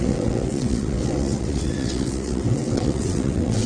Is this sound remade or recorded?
remade